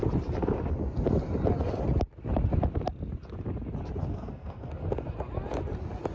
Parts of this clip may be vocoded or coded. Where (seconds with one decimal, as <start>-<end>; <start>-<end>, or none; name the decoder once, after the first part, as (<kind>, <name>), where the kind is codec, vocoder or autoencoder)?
4.1-4.7 (codec, SNAC)